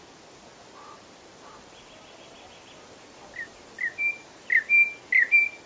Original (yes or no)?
yes